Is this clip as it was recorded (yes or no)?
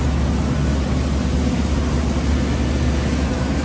yes